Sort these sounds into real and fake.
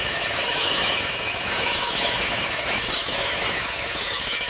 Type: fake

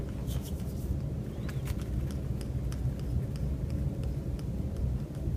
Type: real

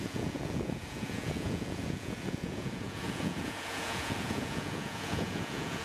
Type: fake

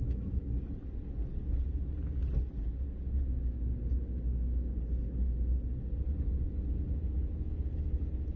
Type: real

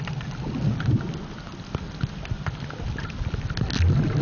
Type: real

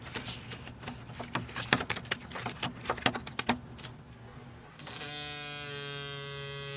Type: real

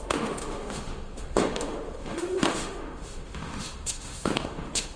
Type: fake